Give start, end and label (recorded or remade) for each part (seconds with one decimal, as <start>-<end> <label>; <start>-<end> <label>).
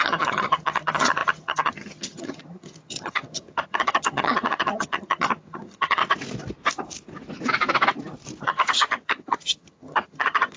0.0-6.0 remade; 6.0-8.4 recorded; 8.4-10.6 remade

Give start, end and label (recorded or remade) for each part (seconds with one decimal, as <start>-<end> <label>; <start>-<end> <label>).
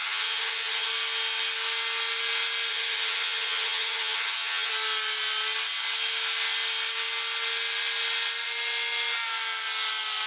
0.0-0.9 remade; 0.9-2.7 recorded; 2.7-4.7 remade; 4.7-10.3 recorded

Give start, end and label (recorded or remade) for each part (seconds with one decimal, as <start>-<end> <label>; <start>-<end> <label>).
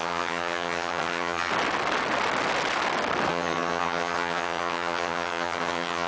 0.0-1.5 remade; 1.5-3.3 recorded; 3.3-6.1 remade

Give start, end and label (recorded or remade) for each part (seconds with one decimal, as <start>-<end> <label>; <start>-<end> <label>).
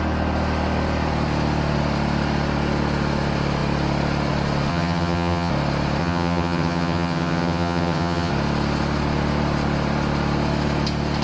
0.0-4.7 recorded; 4.7-5.5 remade; 5.5-6.0 recorded; 6.0-8.3 remade; 8.3-11.2 recorded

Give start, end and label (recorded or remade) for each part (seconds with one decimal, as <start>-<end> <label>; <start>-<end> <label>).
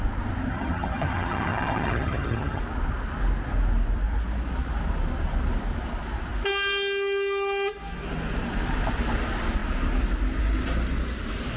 0.0-0.5 recorded; 0.5-2.6 remade; 2.6-11.6 recorded